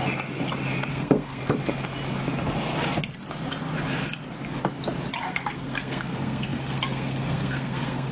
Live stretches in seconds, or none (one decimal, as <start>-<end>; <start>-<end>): 0.0-0.9; 1.4-5.2